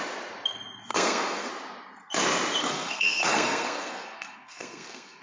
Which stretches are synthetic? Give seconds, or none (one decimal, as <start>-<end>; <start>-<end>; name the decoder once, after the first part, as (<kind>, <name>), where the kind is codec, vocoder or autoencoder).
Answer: 0.9-1.5 (codec, SNAC); 2.6-5.2